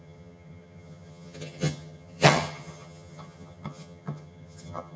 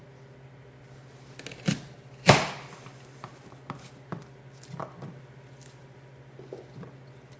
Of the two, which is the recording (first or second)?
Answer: second